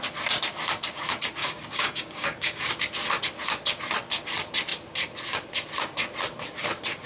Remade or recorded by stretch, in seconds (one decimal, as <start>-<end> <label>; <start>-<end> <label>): 0.0-1.4 recorded; 1.4-2.7 remade; 2.7-7.1 recorded